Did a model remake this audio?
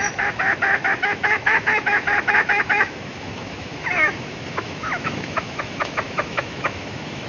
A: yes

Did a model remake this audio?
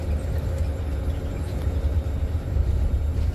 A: no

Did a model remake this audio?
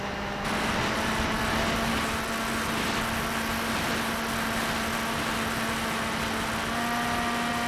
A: no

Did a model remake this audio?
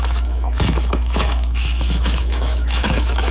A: yes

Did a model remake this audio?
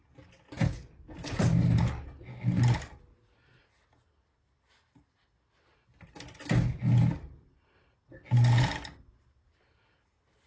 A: no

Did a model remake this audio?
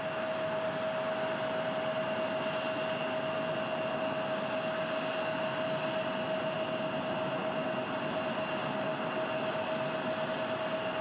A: no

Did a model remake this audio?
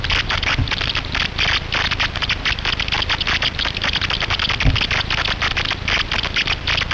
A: no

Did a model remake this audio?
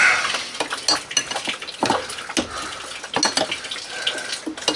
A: no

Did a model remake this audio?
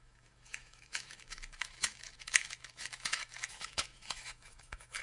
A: yes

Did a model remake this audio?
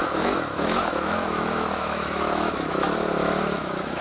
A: yes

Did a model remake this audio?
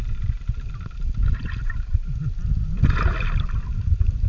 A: no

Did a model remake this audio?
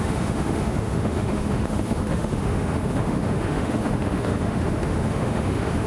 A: yes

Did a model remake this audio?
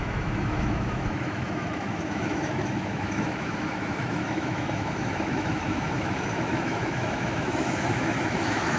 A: yes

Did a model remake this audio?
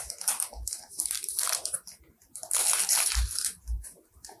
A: no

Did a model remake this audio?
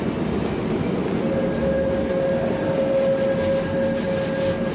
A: no